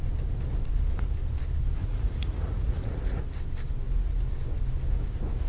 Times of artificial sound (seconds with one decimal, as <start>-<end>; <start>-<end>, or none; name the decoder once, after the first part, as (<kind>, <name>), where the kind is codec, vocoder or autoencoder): 1.8-3.2 (vocoder, Vocos)